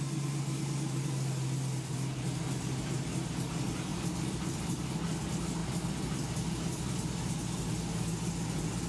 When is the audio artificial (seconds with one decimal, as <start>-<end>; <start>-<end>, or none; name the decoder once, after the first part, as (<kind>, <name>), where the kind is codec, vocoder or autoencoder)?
none